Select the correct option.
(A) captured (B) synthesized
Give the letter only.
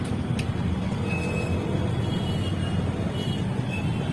A